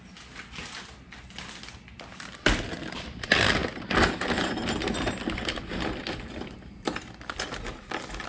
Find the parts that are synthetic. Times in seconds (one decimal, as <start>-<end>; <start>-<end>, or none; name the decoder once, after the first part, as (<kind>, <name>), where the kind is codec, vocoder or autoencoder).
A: none